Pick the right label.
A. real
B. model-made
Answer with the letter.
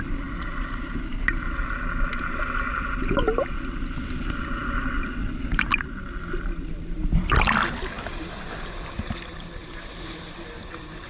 A